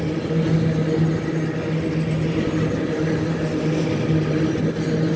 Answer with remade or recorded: recorded